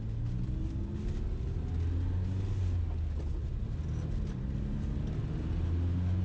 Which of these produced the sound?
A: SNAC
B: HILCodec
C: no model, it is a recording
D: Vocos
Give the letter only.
C